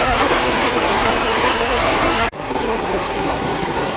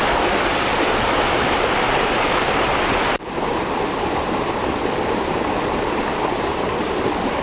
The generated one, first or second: first